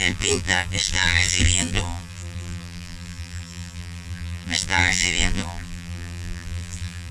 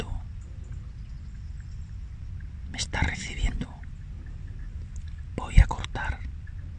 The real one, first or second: second